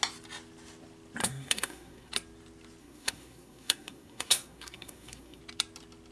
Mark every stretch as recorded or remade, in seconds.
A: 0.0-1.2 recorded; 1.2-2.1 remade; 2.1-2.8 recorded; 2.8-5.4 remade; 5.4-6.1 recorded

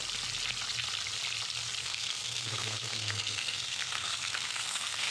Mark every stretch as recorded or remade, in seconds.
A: 0.0-1.8 recorded; 1.8-5.1 remade

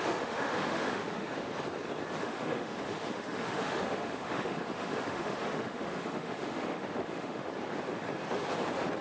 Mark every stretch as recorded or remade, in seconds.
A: 0.0-1.5 remade; 1.5-2.2 recorded; 2.2-7.5 remade; 7.5-9.0 recorded

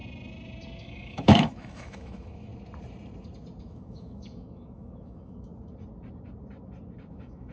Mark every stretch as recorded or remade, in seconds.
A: 0.0-0.8 recorded; 0.8-2.5 remade; 2.5-3.6 recorded; 3.6-5.5 remade; 5.5-7.1 recorded; 7.1-7.5 remade

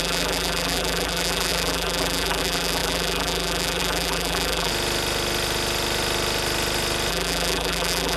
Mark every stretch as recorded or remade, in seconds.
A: 0.0-4.7 remade; 4.7-7.1 recorded; 7.1-8.2 remade

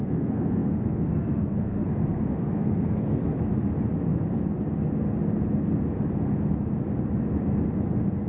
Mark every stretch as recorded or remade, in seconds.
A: 0.0-3.2 remade; 3.2-8.3 recorded